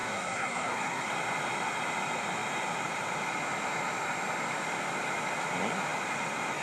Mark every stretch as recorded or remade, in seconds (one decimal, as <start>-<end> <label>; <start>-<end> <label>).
0.0-1.1 remade; 1.1-6.6 recorded